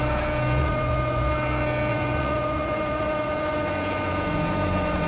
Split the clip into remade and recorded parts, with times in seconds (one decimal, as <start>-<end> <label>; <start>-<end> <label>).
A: 0.0-0.6 recorded; 0.6-1.3 remade; 1.3-1.9 recorded; 1.9-5.1 remade